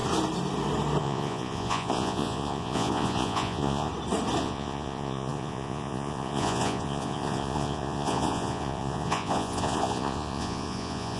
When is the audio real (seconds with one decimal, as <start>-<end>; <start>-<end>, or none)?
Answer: 0.0-1.0; 3.9-4.4